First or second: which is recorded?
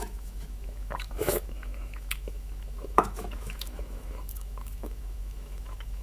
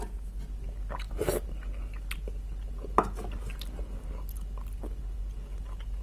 second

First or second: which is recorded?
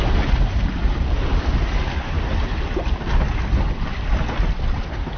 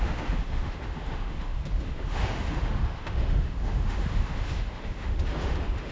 first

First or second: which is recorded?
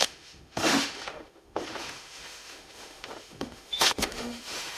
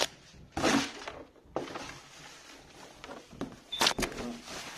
second